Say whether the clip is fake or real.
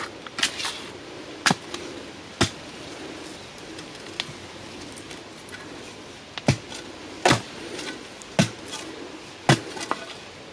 real